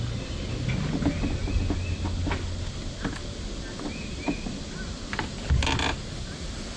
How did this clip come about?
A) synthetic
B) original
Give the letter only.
B